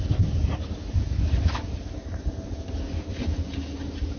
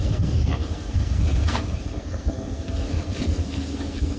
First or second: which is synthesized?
second